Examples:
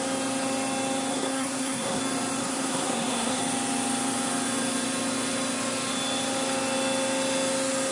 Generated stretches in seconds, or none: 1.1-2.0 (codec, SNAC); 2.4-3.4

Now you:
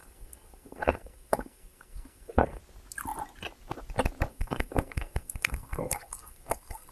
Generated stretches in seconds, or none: 0.0-2.6 (codec, SNAC); 4.3-6.9

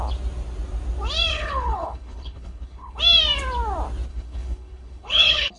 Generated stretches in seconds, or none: 1.3-3.0 (codec, HILCodec); 4.1-5.6

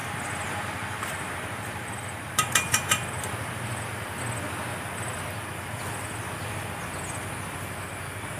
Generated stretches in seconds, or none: 0.0-4.2 (vocoder, BigVGAN v2); 4.7-5.3

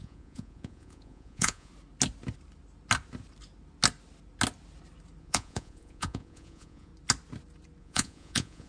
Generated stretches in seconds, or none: 0.0-1.7 (vocoder, Vocos); 5.2-6.9; 7.8-8.7